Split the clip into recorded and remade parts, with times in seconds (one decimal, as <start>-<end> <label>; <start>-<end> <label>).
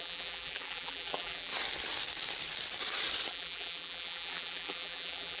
0.0-1.5 remade; 1.5-3.3 recorded; 3.3-5.4 remade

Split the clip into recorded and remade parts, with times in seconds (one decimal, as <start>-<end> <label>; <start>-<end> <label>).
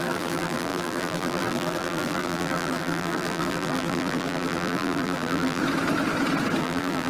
0.0-5.6 remade; 5.6-6.6 recorded; 6.6-7.1 remade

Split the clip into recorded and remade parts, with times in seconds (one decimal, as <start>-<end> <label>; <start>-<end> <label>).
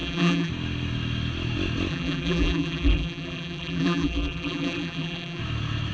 0.0-0.5 remade; 0.5-1.9 recorded; 1.9-5.4 remade; 5.4-5.9 recorded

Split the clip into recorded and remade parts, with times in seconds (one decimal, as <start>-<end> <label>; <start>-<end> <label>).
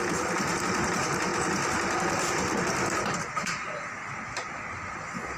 0.0-0.5 recorded; 0.5-1.3 remade; 1.3-4.5 recorded; 4.5-5.4 remade